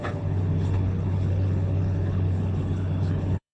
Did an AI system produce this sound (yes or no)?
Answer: yes